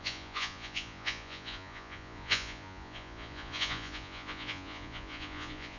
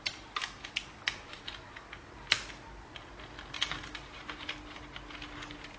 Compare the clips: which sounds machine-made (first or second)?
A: first